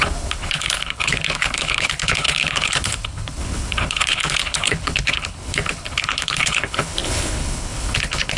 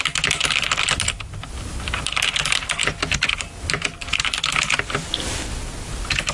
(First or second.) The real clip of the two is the second